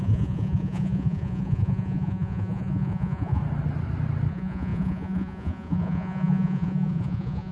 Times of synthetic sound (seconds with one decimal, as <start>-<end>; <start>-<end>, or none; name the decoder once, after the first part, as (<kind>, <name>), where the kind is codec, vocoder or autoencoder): 0.0-3.4 (vocoder, Vocos); 4.3-7.5